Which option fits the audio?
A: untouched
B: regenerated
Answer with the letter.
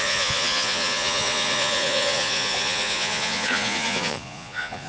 B